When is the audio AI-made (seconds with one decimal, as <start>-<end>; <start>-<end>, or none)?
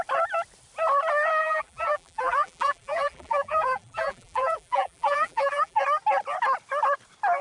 1.4-5.8